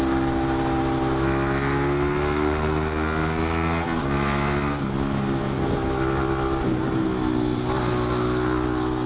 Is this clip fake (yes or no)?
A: no